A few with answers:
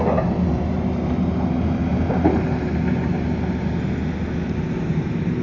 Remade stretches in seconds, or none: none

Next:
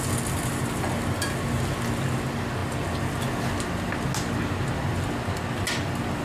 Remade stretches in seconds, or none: none

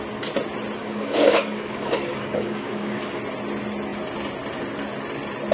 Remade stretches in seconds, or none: 0.8-3.2 (codec, DAC)